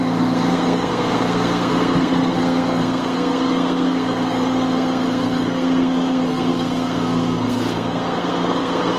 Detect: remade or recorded remade